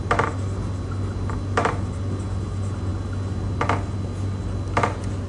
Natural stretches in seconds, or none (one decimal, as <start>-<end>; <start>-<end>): 0.0-5.3